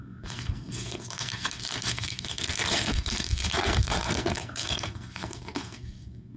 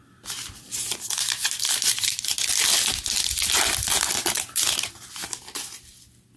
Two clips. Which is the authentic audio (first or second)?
second